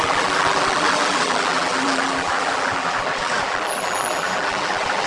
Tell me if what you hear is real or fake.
fake